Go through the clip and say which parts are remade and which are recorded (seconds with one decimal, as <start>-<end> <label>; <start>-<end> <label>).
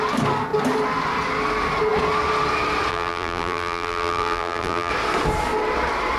0.0-2.9 recorded; 2.9-4.9 remade; 4.9-6.2 recorded